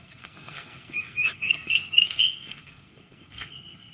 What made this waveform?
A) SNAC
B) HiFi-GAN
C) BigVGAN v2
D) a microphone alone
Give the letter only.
A